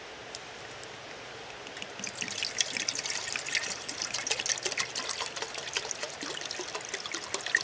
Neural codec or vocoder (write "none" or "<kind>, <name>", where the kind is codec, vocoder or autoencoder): none